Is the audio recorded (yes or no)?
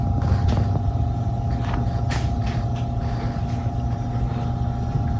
yes